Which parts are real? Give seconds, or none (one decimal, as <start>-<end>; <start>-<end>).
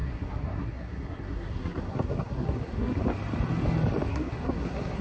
3.0-4.1